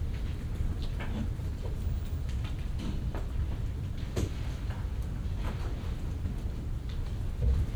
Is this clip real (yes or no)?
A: yes